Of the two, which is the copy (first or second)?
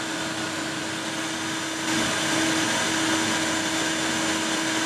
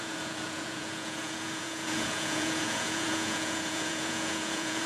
second